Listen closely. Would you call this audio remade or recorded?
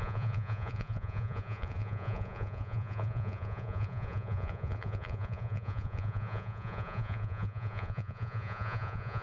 remade